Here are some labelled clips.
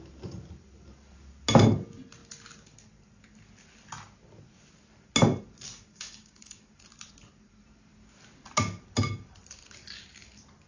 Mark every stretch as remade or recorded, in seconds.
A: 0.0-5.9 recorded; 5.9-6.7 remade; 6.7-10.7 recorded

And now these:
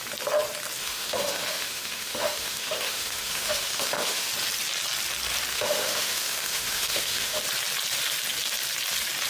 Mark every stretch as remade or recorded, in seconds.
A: 0.0-0.8 recorded; 0.8-4.3 remade; 4.3-5.5 recorded; 5.5-7.4 remade; 7.4-9.3 recorded